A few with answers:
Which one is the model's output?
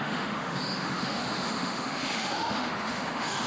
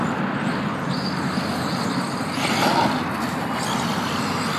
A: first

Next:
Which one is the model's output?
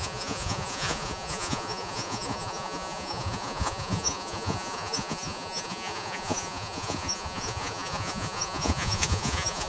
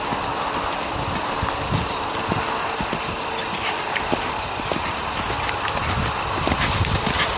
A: first